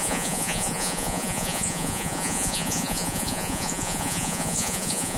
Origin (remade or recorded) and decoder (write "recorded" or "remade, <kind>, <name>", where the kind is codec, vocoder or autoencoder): remade, vocoder, Vocos